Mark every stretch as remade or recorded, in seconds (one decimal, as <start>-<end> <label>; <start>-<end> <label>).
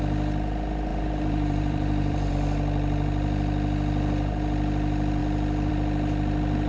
0.0-0.9 recorded; 0.9-2.3 remade; 2.3-6.7 recorded